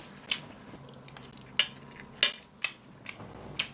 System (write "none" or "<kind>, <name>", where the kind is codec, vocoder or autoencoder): none